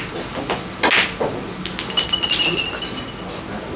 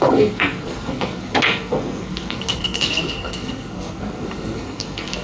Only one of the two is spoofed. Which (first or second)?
second